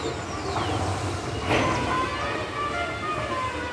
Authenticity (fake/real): real